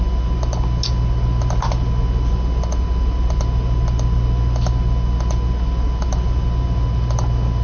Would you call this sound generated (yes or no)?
no